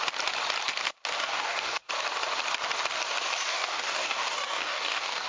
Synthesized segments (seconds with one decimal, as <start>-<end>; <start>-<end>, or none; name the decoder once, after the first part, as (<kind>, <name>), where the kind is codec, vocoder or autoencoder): 1.2-1.9 (codec, DAC); 3.5-5.3